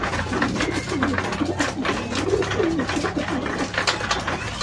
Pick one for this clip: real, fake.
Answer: real